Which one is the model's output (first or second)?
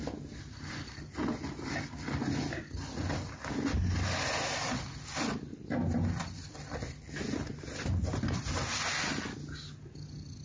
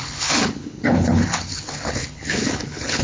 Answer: second